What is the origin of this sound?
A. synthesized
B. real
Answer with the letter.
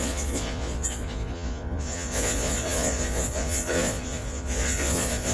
A